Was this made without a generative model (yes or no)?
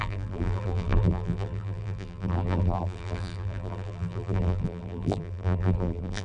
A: no